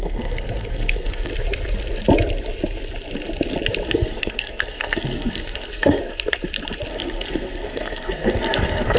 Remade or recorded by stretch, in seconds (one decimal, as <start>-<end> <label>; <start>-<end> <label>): 0.0-1.3 remade; 1.3-3.9 recorded; 3.9-6.0 remade; 6.0-6.9 recorded; 6.9-9.0 remade